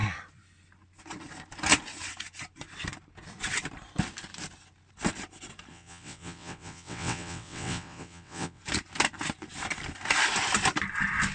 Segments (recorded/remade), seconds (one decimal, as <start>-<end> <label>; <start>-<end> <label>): 0.0-5.7 recorded; 5.7-8.6 remade; 8.6-11.3 recorded